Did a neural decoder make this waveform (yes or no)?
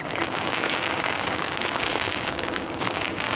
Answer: yes